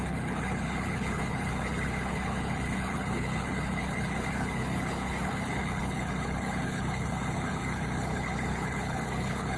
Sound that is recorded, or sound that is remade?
remade